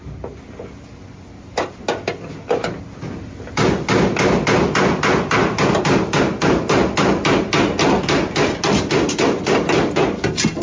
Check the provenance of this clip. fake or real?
real